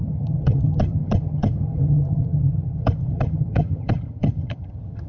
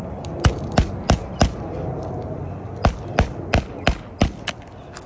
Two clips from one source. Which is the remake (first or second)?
first